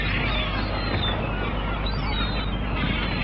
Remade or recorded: recorded